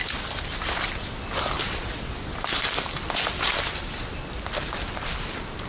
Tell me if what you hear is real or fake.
real